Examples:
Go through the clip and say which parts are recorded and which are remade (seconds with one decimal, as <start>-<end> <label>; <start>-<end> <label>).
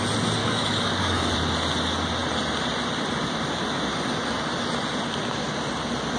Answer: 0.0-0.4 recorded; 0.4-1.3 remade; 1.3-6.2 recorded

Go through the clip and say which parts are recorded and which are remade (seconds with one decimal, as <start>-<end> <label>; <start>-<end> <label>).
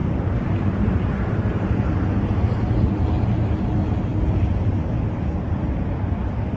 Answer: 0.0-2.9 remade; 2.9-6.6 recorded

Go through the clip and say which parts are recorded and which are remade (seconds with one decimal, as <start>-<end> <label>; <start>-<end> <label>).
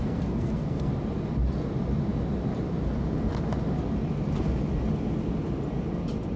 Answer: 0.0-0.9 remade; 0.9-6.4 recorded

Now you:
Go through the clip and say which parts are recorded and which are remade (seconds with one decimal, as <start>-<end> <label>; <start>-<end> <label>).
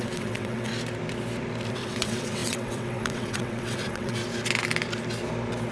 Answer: 0.0-0.7 remade; 0.7-1.7 recorded; 1.7-4.2 remade; 4.2-5.7 recorded